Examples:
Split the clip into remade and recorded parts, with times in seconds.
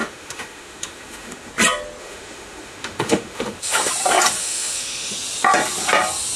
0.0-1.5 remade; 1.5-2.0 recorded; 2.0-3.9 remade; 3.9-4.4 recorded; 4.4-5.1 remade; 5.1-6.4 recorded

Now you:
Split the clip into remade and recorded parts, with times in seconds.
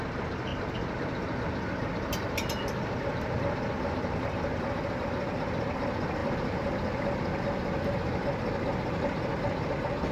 0.0-10.1 recorded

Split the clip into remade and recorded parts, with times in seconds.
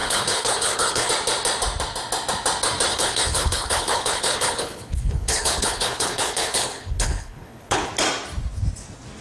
0.0-1.1 remade; 1.1-2.9 recorded; 2.9-7.9 remade; 7.9-9.2 recorded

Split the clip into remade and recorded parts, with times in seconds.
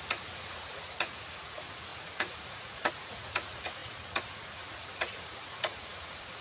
0.0-6.4 remade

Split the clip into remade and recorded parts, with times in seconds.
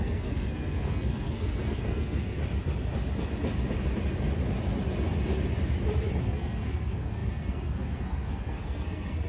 0.0-2.4 remade; 2.4-6.2 recorded; 6.2-9.3 remade